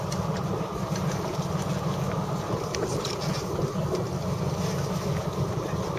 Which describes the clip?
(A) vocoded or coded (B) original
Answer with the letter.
B